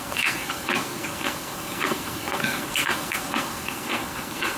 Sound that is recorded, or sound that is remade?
remade